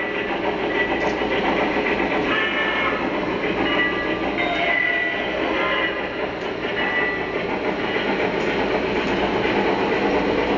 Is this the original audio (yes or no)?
yes